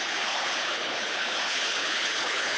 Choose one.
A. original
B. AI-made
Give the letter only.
B